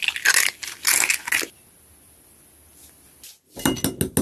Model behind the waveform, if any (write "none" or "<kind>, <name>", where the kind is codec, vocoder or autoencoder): none